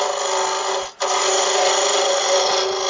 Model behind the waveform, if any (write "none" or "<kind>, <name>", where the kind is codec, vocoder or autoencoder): none